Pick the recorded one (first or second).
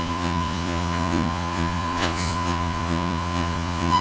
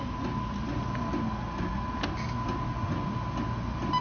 second